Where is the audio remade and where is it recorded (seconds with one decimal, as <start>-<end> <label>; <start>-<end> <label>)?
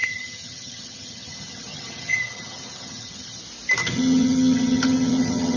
0.0-3.4 remade; 3.4-3.8 recorded; 3.8-5.6 remade